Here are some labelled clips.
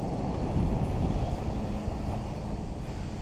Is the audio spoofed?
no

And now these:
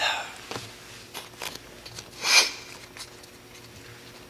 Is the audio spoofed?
no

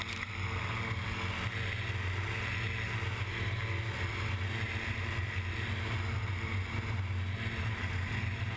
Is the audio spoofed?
no